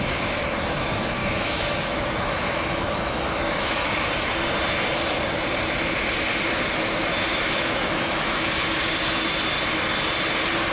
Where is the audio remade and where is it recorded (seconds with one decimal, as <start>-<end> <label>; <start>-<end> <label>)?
0.0-1.2 recorded; 1.2-4.1 remade; 4.1-7.3 recorded; 7.3-8.7 remade; 8.7-10.7 recorded